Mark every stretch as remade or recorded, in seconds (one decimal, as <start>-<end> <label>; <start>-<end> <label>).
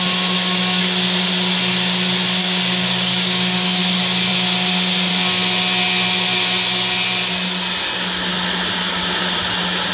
0.0-2.4 recorded; 2.4-3.8 remade; 3.8-9.9 recorded